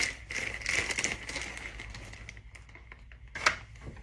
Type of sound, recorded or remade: recorded